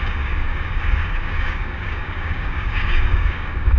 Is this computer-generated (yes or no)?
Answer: yes